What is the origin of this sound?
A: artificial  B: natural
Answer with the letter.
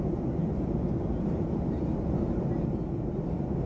B